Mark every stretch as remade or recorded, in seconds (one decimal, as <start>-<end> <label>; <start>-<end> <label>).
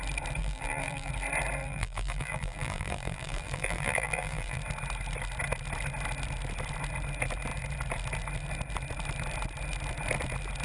0.0-0.4 recorded; 0.4-1.1 remade; 1.1-1.6 recorded; 1.6-4.6 remade; 4.6-10.6 recorded